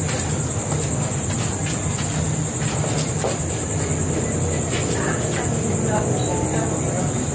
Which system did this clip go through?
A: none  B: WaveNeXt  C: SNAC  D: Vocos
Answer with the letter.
A